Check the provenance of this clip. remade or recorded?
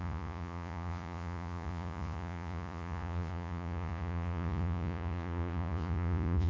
remade